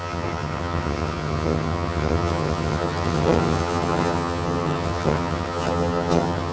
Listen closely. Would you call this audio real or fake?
fake